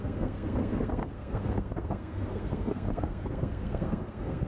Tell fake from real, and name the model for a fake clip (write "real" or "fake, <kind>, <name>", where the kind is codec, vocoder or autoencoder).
fake, codec, SNAC